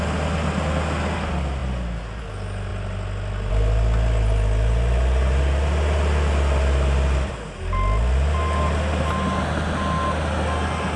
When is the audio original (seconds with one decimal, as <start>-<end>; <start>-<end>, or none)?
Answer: 0.0-11.0